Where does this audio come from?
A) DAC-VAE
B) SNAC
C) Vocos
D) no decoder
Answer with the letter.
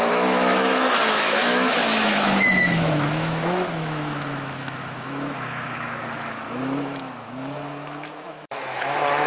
A